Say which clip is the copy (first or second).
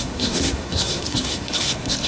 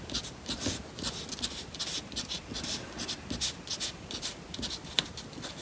first